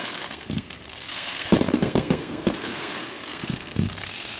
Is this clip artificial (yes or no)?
yes